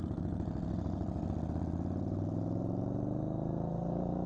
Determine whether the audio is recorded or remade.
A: recorded